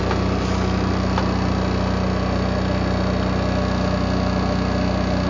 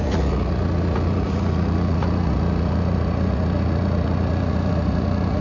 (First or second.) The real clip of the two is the first